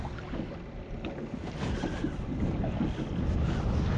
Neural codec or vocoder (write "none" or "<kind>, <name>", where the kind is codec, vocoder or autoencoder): none